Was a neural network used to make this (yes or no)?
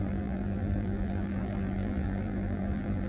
yes